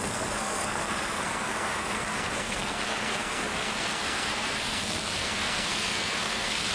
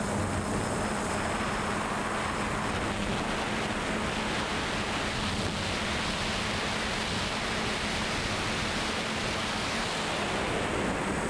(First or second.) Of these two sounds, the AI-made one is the first